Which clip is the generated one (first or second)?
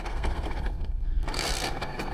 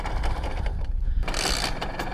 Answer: first